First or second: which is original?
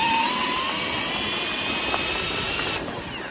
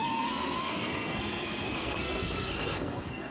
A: first